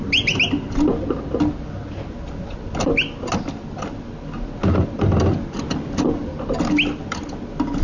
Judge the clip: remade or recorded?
recorded